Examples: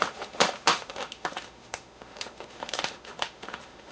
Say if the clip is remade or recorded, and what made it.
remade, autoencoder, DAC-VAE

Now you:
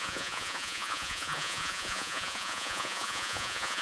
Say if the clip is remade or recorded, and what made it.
remade, vocoder, Vocos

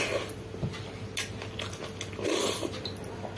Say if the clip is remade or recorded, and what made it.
recorded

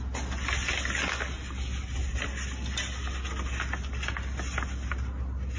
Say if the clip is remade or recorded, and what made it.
recorded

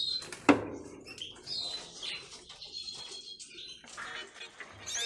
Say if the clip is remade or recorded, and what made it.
recorded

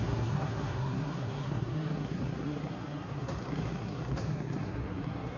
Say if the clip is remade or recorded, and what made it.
remade, codec, SNAC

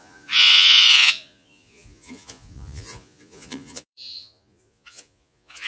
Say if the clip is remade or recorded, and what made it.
remade, vocoder, Vocos